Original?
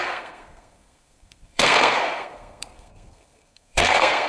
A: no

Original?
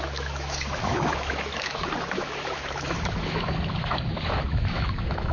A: no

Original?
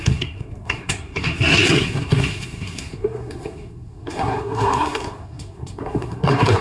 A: no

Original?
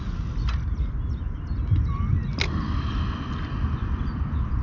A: yes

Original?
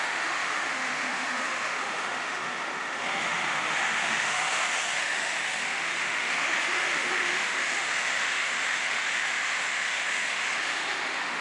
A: no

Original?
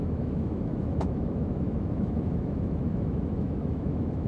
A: no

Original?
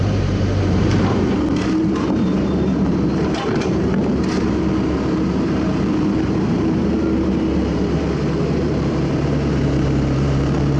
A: no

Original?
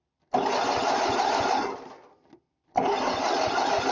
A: yes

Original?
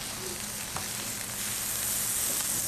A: yes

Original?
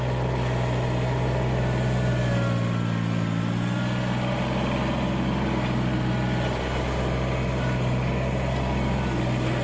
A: yes